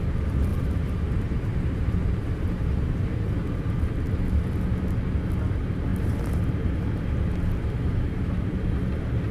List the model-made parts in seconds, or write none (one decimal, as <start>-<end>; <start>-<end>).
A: 0.5-4.1; 5.9-7.3